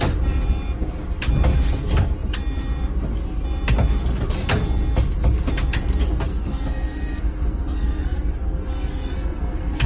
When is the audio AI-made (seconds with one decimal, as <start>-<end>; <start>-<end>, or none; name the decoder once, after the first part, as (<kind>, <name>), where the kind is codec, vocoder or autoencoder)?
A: 6.3-9.9 (codec, SNAC)